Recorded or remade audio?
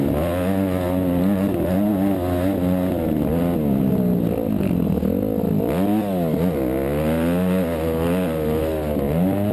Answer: recorded